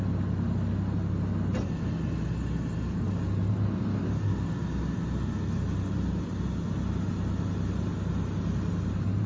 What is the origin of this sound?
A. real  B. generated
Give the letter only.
A